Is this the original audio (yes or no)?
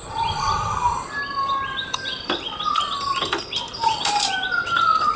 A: yes